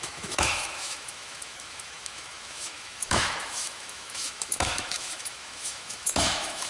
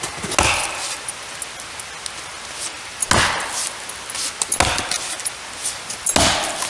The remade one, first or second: first